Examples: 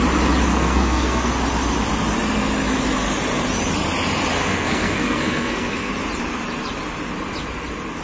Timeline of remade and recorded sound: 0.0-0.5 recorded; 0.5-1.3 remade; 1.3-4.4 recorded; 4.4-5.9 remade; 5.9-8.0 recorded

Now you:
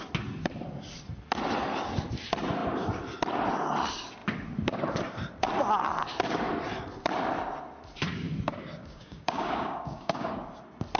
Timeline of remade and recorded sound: 0.0-8.8 recorded; 8.8-10.3 remade; 10.3-11.0 recorded

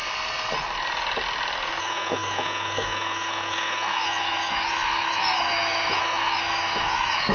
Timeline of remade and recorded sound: 0.0-1.8 recorded; 1.8-7.3 remade

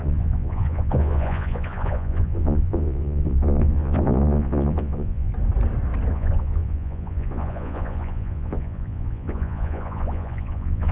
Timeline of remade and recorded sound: 0.0-5.3 remade; 5.3-6.1 recorded; 6.1-10.9 remade

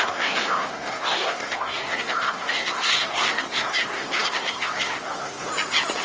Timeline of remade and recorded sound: 0.0-5.5 remade; 5.5-6.0 recorded

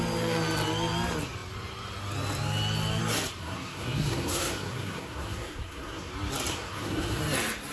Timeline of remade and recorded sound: 0.0-3.4 recorded; 3.4-6.1 remade; 6.1-6.5 recorded; 6.5-7.2 remade; 7.2-7.7 recorded

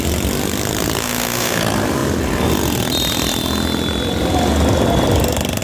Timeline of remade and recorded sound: 0.0-1.0 recorded; 1.0-1.6 remade; 1.6-5.6 recorded